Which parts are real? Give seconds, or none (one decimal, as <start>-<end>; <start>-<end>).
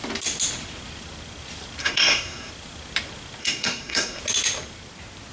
0.0-1.8; 2.5-3.4; 4.2-5.3